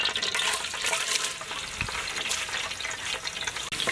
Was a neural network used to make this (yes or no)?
no